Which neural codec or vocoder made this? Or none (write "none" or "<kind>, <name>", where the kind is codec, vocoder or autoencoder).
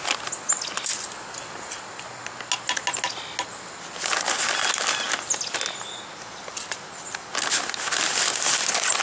none